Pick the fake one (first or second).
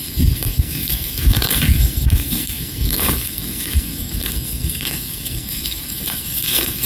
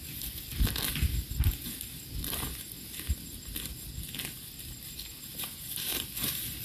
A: first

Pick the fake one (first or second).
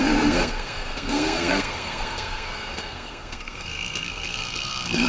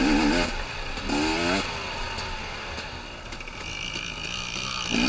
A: first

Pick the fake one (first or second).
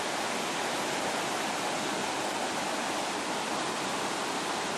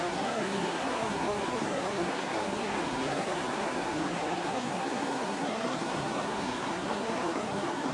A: second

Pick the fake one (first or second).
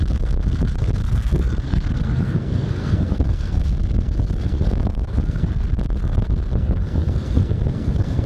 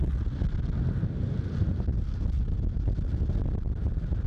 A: first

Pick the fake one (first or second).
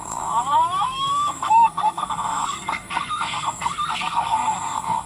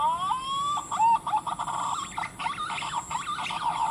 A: first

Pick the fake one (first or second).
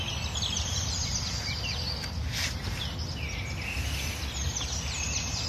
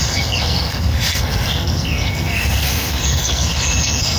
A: second